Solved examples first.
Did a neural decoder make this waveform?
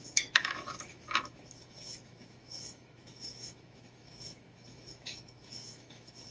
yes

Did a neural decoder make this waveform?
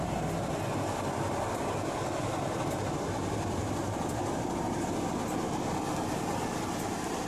no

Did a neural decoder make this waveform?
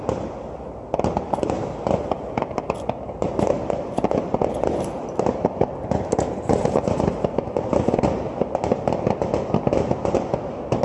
no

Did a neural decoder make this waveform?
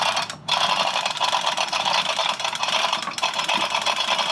no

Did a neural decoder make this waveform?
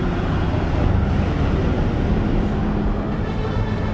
no